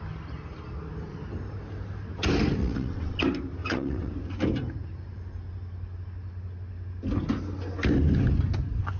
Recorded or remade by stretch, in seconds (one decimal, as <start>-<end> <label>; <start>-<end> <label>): 0.0-2.6 recorded; 2.6-3.2 remade; 3.2-3.6 recorded; 3.6-4.1 remade; 4.1-9.0 recorded